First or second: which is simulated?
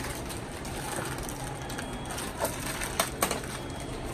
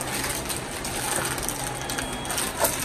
first